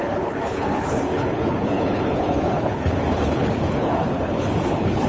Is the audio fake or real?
fake